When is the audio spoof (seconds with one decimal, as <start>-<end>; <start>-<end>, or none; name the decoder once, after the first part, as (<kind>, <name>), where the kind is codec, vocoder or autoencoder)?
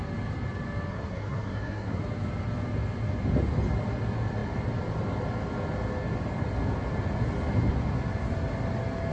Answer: 0.9-2.0 (codec, SNAC)